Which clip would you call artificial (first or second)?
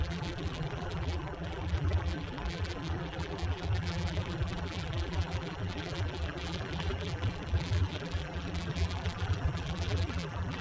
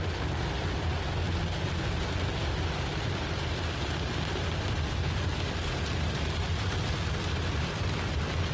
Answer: first